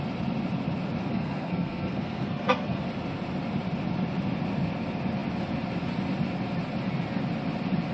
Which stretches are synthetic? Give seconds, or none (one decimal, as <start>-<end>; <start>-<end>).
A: 1.0-2.8